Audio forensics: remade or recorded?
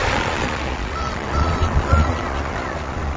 remade